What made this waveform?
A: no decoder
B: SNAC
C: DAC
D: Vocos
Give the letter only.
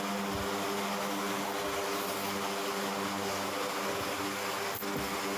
A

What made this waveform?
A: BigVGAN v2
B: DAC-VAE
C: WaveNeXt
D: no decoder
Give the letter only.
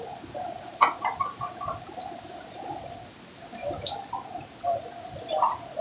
D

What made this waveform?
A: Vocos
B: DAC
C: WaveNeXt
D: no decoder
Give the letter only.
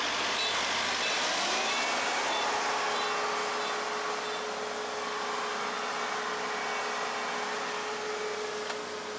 D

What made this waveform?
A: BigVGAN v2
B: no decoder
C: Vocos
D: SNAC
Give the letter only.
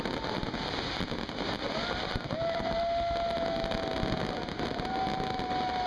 B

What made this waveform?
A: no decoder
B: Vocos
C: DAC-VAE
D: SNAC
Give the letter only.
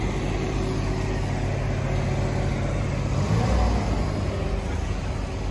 A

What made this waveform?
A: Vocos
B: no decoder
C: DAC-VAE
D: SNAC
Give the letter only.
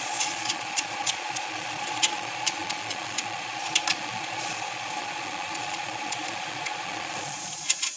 A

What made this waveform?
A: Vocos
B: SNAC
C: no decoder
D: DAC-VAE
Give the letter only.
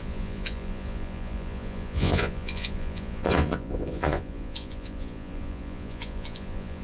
A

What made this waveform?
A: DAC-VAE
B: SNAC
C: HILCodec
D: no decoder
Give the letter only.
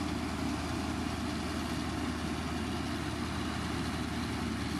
D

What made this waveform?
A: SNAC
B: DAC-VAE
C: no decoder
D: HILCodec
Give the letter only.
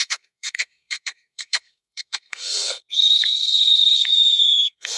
A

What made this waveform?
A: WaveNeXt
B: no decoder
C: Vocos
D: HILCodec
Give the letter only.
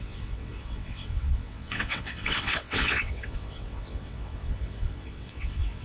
A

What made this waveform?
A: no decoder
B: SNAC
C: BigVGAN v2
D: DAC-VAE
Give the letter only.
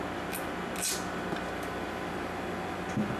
A